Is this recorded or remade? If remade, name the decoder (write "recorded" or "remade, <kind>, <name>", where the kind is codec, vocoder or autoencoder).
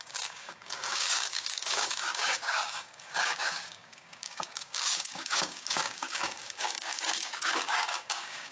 remade, codec, DAC